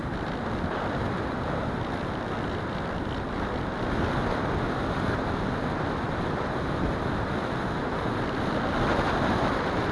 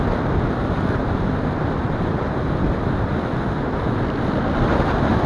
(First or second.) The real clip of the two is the first